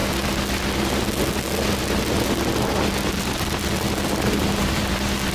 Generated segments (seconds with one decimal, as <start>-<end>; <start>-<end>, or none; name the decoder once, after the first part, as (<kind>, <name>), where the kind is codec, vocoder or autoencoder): none